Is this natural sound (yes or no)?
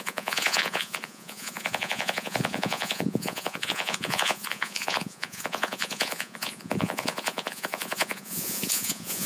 no